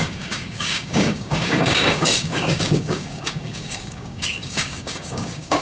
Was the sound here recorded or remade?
remade